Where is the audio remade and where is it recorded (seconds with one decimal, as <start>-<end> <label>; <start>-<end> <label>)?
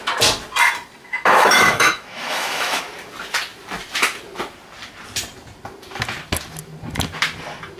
0.0-1.0 recorded; 1.0-2.8 remade; 2.8-7.8 recorded